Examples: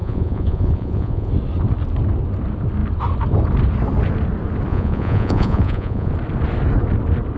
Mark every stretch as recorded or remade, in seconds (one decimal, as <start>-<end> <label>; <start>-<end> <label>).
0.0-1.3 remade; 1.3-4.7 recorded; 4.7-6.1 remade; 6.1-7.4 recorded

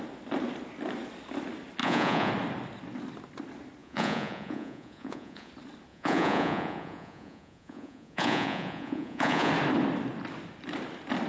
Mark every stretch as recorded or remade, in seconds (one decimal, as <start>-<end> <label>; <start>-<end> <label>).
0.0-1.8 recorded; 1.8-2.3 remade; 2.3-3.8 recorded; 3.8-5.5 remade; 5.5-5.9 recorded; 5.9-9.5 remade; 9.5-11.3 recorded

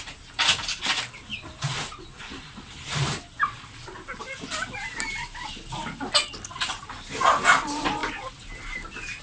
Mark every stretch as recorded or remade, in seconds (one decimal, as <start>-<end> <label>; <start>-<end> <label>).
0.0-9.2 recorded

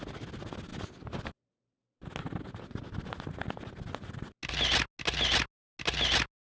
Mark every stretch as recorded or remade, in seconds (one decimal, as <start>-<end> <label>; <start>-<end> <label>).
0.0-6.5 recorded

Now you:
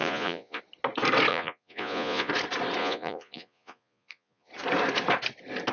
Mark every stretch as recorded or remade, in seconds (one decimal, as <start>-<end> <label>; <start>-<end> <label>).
0.0-0.6 remade; 0.6-1.3 recorded; 1.3-2.3 remade; 2.3-2.8 recorded; 2.8-4.5 remade; 4.5-5.7 recorded